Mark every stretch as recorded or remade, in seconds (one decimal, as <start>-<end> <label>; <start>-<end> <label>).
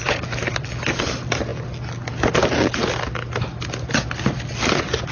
0.0-5.1 recorded